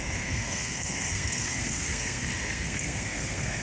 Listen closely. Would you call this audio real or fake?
fake